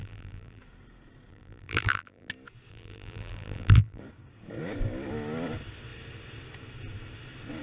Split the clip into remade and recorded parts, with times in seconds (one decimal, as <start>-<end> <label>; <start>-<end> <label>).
0.0-0.6 remade; 0.6-1.3 recorded; 1.3-2.3 remade; 2.3-2.7 recorded; 2.7-4.0 remade; 4.0-7.6 recorded